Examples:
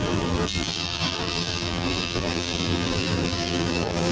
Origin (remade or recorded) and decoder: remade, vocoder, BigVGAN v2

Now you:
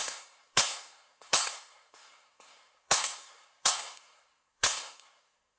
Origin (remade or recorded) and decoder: remade, codec, SNAC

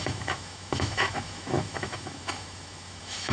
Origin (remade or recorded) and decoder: remade, autoencoder, DAC-VAE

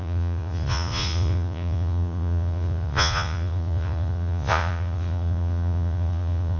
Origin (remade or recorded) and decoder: remade, vocoder, Vocos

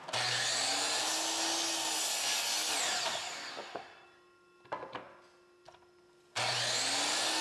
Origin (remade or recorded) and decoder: recorded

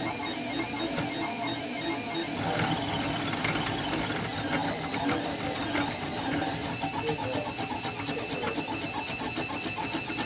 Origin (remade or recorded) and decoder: recorded